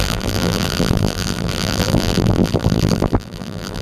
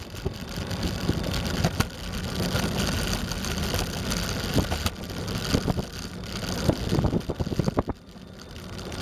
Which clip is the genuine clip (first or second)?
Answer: second